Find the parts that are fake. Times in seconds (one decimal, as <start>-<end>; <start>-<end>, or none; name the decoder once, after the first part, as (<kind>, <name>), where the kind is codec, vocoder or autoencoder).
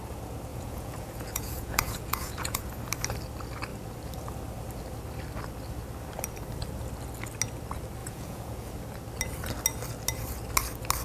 0.5-2.7 (vocoder, Vocos); 8.0-8.7